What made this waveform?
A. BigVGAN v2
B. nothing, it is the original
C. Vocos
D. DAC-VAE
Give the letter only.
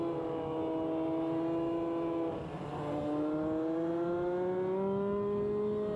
B